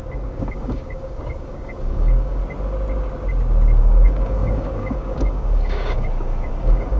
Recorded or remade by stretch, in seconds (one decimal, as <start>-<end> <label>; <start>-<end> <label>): 0.0-2.4 remade; 2.4-3.8 recorded; 3.8-7.0 remade